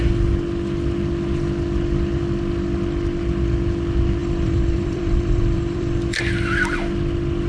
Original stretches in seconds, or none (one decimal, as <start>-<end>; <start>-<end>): 0.0-4.2; 6.2-7.5